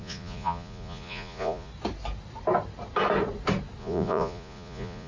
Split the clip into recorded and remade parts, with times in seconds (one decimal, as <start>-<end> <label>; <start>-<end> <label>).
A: 0.0-1.7 remade; 1.7-3.8 recorded; 3.8-5.1 remade